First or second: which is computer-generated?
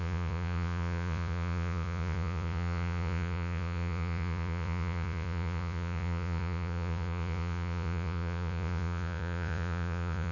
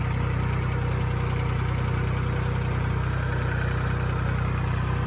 first